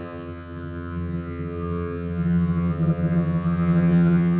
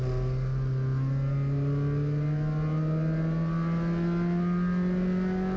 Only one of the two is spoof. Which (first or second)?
first